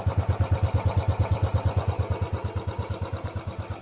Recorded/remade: recorded